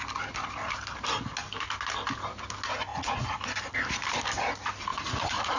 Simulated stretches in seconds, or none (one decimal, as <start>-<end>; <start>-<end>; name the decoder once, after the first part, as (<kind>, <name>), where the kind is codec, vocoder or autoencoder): 2.9-3.4 (vocoder, Vocos); 4.9-5.6